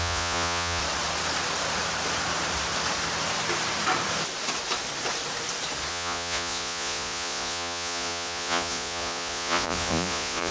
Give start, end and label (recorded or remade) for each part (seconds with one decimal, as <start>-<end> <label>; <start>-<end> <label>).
0.0-0.8 remade; 0.8-5.9 recorded; 5.9-10.5 remade